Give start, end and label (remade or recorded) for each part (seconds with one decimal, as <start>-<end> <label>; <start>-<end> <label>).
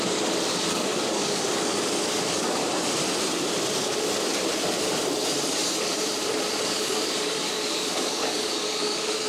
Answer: 0.0-2.6 remade; 2.6-6.6 recorded; 6.6-9.3 remade